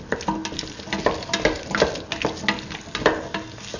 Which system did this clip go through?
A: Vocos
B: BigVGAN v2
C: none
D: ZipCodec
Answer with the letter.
C